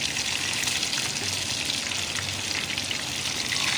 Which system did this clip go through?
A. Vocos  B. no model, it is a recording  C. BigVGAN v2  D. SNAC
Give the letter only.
B